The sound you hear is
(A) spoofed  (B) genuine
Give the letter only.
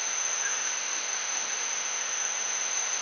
A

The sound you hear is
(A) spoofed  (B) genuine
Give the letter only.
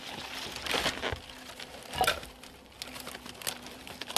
B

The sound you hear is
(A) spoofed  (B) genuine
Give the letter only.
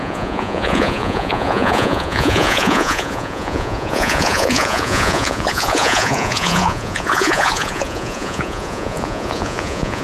A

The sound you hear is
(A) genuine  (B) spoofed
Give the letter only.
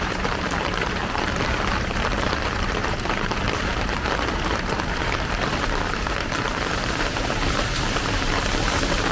B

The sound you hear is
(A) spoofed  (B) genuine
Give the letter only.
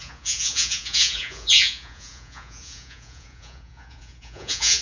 A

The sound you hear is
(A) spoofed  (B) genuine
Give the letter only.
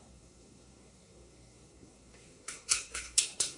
A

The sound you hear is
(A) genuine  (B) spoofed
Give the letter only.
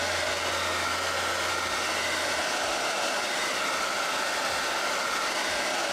A